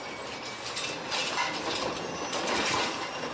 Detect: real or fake real